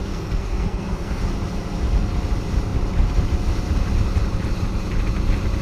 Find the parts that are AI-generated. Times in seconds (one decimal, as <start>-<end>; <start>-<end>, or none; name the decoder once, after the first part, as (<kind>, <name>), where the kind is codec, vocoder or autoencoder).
0.0-1.2 (codec, SNAC)